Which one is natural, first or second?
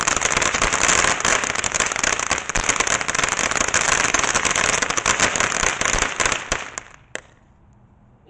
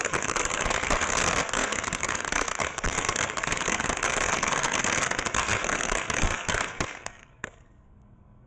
first